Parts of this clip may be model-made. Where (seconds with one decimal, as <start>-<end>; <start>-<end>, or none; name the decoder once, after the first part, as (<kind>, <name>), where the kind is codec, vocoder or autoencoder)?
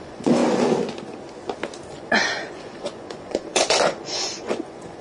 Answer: 0.0-0.4 (vocoder, Vocos); 1.9-5.0